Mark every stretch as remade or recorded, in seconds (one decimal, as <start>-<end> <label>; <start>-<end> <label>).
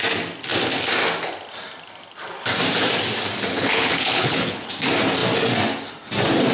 0.0-3.5 recorded; 3.5-4.7 remade; 4.7-6.5 recorded